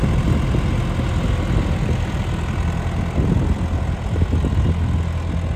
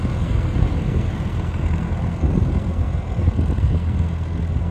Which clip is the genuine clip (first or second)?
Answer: first